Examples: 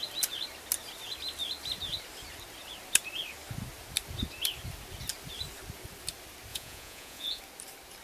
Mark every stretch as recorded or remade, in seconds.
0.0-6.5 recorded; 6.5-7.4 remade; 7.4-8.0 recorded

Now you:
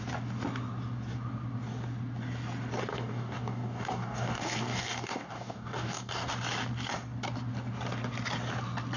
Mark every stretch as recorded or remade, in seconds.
0.0-2.9 recorded; 2.9-6.3 remade; 6.3-9.0 recorded

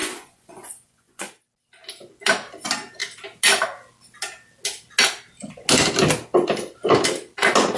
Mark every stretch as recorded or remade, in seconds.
0.0-1.3 remade; 1.3-7.8 recorded

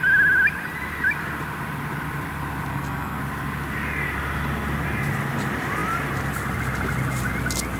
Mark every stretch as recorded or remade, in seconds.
0.0-2.7 recorded; 2.7-3.2 remade; 3.2-7.8 recorded

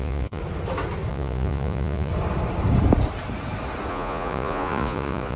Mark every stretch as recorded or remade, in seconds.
0.0-0.4 remade; 0.4-1.1 recorded; 1.1-2.1 remade; 2.1-3.9 recorded; 3.9-5.4 remade